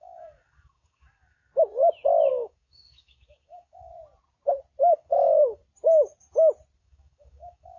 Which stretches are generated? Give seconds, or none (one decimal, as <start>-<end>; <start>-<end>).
0.0-1.5; 2.3-3.9; 4.9-5.6; 6.8-7.8